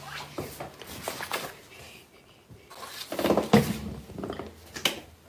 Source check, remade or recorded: recorded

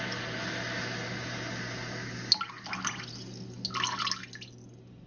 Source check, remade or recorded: recorded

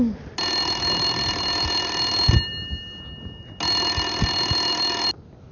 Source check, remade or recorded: recorded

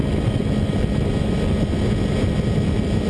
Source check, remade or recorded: recorded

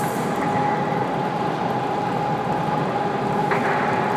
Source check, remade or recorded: recorded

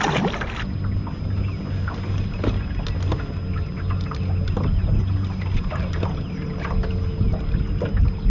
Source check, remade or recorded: recorded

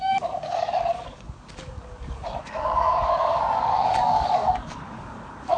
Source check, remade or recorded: remade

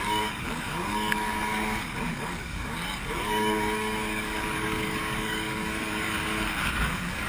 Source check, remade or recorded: remade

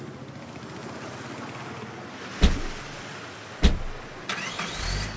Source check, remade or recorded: recorded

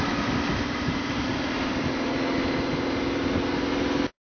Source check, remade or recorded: recorded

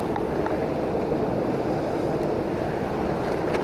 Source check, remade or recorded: recorded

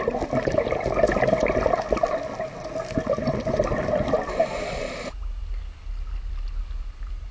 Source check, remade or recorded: recorded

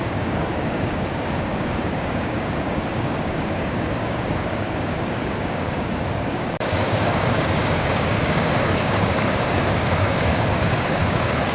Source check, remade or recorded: remade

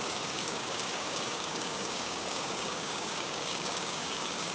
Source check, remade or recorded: remade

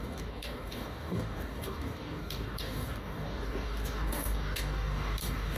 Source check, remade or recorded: remade